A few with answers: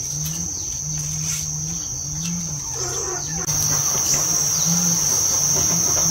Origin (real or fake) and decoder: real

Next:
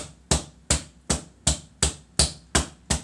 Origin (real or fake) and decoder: real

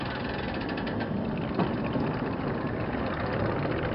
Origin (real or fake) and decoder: fake, vocoder, BigVGAN v2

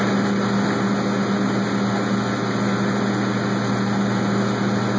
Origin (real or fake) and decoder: real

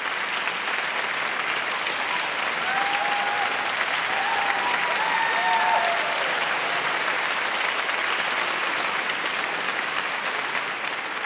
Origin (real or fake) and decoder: real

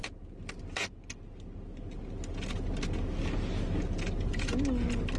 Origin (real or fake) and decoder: real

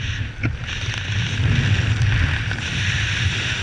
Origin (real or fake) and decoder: real